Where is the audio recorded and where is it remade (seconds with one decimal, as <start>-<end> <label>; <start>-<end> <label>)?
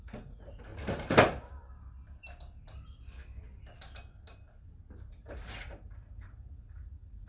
0.0-0.7 remade; 0.7-5.1 recorded; 5.1-7.3 remade